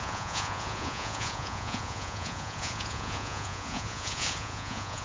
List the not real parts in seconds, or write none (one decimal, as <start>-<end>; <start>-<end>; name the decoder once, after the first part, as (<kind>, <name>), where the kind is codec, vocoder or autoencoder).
0.0-5.0 (vocoder, Vocos)